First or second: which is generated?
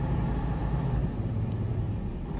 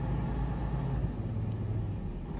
first